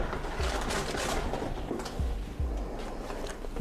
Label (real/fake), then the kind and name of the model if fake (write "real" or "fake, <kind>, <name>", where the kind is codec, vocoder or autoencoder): real